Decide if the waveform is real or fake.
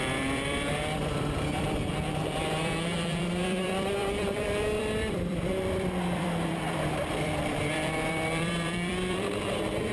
fake